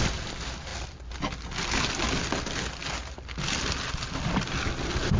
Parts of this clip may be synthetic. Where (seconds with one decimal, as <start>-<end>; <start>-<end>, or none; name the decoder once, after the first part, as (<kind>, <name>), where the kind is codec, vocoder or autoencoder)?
none